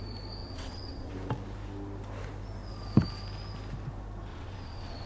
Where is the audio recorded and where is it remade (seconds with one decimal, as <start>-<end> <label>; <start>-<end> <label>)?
0.0-0.4 recorded; 0.4-1.1 remade; 1.1-4.3 recorded; 4.3-5.1 remade

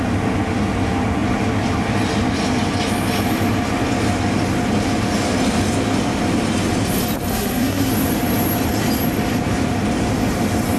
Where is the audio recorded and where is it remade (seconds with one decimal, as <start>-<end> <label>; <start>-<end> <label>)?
0.0-7.3 recorded; 7.3-7.9 remade; 7.9-10.8 recorded

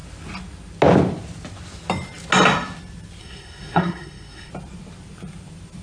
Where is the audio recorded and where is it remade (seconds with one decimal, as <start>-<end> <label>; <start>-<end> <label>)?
0.0-3.2 recorded; 3.2-4.5 remade; 4.5-5.8 recorded

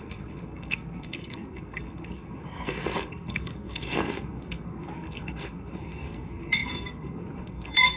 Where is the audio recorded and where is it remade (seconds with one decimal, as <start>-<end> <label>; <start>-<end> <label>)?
0.0-8.0 remade

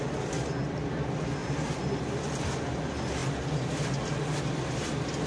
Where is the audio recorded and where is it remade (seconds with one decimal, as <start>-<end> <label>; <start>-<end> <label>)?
0.0-1.4 recorded; 1.4-2.0 remade; 2.0-5.3 recorded

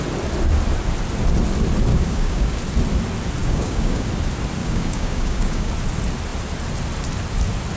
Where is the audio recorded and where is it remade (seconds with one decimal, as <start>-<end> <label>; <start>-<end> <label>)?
0.0-1.9 recorded; 1.9-2.6 remade; 2.6-3.4 recorded; 3.4-4.1 remade; 4.1-4.6 recorded; 4.6-5.7 remade; 5.7-7.8 recorded

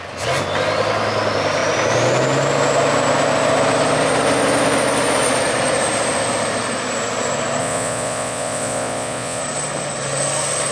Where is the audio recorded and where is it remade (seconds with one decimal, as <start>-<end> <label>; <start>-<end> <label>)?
0.0-7.6 recorded; 7.6-9.4 remade; 9.4-10.7 recorded